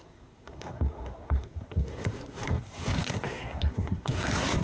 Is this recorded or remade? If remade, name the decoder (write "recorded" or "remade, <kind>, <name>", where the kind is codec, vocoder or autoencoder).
remade, codec, SNAC